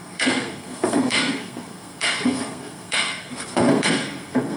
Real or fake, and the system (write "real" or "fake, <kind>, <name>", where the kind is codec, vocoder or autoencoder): fake, codec, SNAC